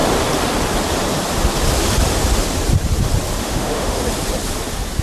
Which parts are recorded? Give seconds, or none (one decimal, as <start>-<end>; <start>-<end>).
0.0-3.4; 4.0-5.0